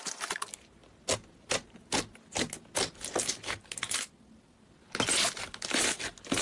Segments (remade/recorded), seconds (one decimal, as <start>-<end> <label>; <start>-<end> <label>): 0.0-6.4 recorded